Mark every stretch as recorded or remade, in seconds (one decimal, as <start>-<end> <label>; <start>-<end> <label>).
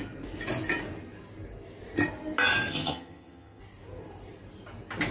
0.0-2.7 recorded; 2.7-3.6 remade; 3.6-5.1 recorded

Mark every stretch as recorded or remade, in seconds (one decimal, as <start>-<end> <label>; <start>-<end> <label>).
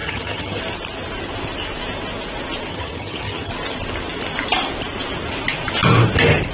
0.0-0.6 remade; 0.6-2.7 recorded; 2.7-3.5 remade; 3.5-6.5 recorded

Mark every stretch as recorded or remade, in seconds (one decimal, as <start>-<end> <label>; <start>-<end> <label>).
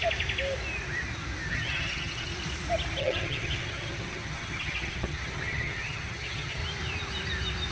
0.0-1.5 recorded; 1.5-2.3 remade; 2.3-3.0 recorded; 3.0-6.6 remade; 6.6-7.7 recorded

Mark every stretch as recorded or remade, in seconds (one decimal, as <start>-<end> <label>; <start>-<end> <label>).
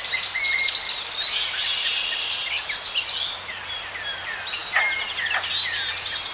0.0-6.3 recorded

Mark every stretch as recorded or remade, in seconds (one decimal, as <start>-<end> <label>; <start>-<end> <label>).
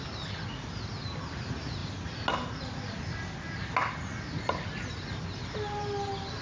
0.0-6.4 recorded